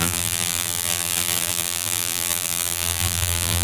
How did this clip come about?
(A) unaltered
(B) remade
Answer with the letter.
B